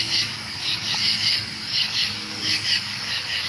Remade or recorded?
remade